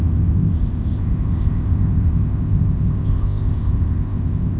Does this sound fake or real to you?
fake